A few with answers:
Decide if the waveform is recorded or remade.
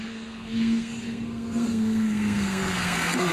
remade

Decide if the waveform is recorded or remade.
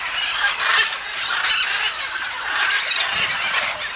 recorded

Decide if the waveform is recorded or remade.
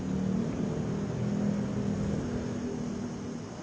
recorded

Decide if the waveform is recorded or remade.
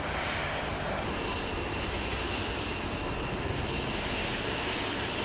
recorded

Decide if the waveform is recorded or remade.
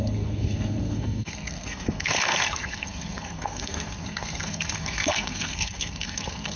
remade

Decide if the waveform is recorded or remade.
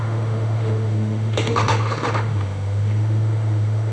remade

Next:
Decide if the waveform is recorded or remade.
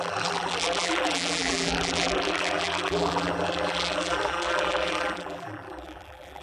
remade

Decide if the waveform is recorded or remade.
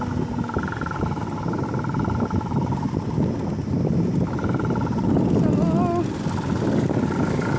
recorded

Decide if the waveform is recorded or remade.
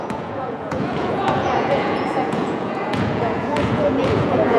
remade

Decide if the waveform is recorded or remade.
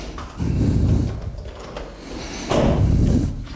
recorded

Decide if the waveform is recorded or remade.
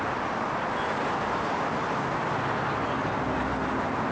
recorded